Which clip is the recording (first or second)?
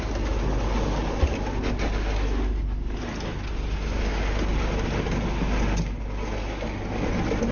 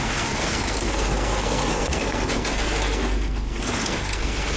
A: first